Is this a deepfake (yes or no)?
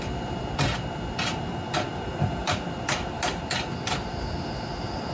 no